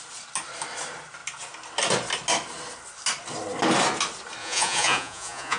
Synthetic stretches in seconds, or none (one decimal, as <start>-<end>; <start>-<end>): 4.4-5.6